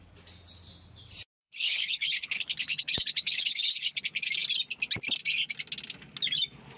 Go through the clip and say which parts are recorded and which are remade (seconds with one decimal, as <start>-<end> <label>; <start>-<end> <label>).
0.0-1.4 recorded; 1.4-4.0 remade; 4.0-6.8 recorded